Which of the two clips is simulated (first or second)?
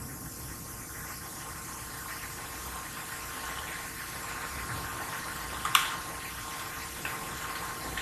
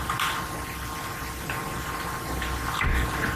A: first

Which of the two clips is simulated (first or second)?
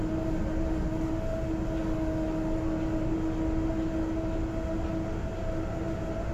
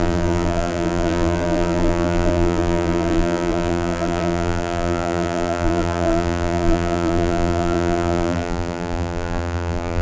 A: second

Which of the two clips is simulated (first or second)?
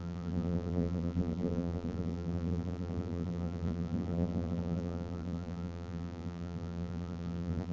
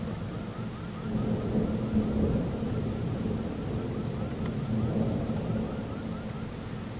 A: first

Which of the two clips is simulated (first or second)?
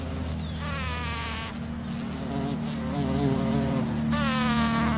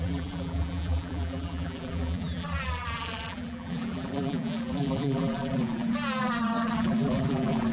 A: second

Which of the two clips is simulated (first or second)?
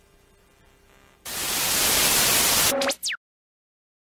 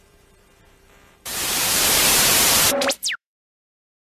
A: second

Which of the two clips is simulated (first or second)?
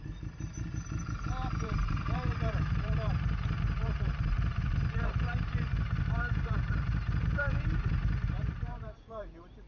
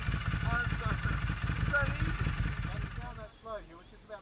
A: first